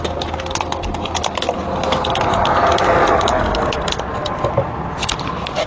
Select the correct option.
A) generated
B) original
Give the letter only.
B